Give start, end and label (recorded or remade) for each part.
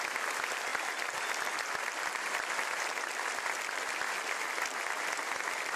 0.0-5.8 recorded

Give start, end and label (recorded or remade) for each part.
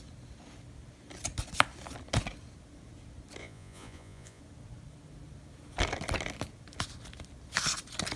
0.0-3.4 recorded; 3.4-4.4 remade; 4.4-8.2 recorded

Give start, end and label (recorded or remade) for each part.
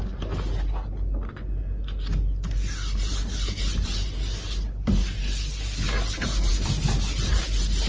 0.0-7.9 recorded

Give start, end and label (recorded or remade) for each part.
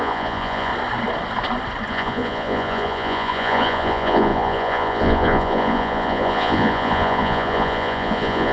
0.0-0.7 remade; 0.7-1.9 recorded; 1.9-8.5 remade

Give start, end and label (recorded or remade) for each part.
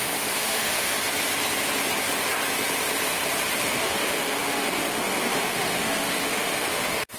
0.0-0.9 remade; 0.9-3.6 recorded; 3.6-7.2 remade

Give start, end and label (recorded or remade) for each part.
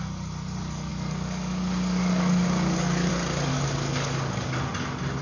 0.0-0.9 recorded; 0.9-3.1 remade; 3.1-3.5 recorded; 3.5-4.6 remade; 4.6-5.2 recorded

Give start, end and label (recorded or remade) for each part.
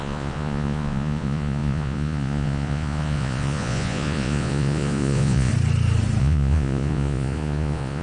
0.0-5.5 remade; 5.5-6.2 recorded; 6.2-8.0 remade